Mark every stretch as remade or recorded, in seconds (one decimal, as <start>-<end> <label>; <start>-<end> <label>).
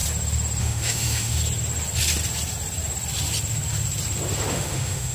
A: 0.0-0.6 recorded; 0.6-1.4 remade; 1.4-4.5 recorded; 4.5-5.1 remade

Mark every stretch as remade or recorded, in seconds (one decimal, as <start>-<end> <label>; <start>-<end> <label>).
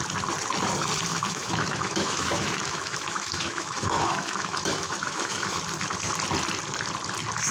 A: 0.0-1.1 recorded; 1.1-5.6 remade; 5.6-7.5 recorded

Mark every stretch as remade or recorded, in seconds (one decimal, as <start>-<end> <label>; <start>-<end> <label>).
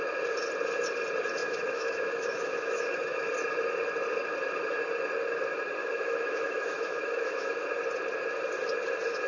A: 0.0-1.4 recorded; 1.4-3.3 remade; 3.3-5.8 recorded; 5.8-7.7 remade; 7.7-9.3 recorded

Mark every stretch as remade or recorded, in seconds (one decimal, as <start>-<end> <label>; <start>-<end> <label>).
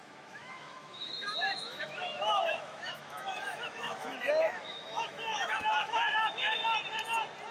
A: 0.0-6.6 remade; 6.6-7.5 recorded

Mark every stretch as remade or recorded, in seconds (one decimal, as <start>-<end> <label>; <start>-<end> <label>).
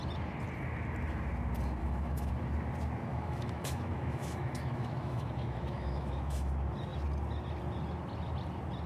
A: 0.0-1.8 recorded; 1.8-2.3 remade; 2.3-3.1 recorded; 3.1-6.5 remade; 6.5-8.9 recorded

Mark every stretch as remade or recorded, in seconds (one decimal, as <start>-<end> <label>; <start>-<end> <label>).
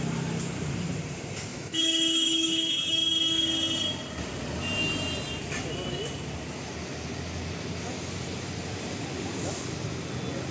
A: 0.0-1.5 recorded; 1.5-2.9 remade; 2.9-10.5 recorded